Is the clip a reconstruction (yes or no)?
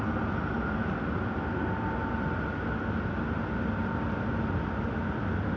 no